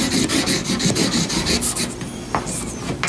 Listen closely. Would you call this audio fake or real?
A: real